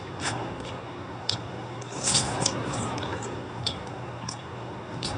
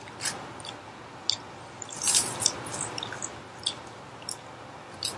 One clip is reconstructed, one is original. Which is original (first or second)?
second